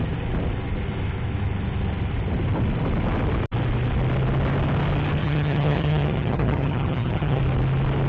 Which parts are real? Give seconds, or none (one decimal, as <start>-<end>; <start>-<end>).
0.0-5.2; 7.4-8.1

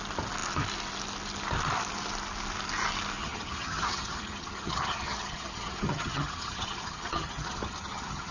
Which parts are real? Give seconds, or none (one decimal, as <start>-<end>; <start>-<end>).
0.0-3.2

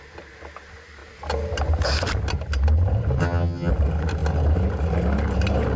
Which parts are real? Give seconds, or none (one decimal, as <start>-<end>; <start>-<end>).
0.0-3.2; 3.7-5.8

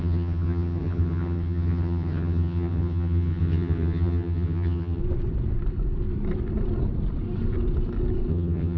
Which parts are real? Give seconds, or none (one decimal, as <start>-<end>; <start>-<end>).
5.0-8.3